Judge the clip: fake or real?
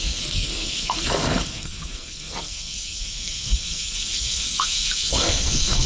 fake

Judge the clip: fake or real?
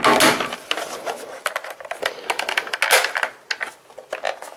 real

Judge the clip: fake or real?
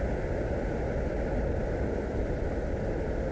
real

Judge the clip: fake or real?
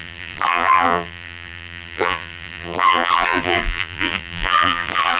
fake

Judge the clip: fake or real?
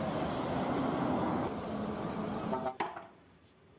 real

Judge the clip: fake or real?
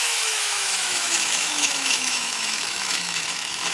fake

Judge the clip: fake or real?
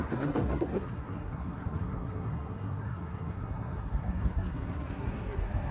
fake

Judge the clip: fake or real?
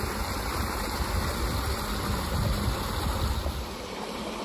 real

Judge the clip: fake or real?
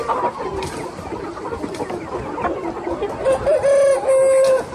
real